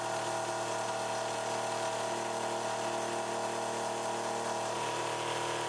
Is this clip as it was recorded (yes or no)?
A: yes